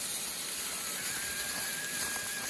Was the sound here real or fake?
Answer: real